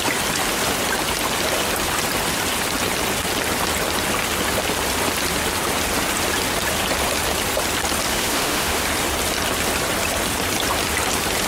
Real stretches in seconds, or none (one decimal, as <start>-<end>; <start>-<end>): 0.0-8.1; 8.8-11.5